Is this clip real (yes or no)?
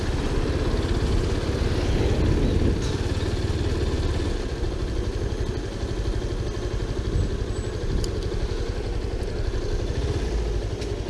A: yes